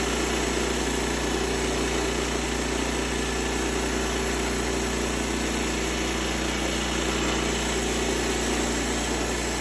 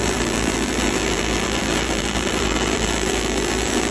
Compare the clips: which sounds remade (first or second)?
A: second